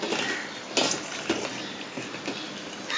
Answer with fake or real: real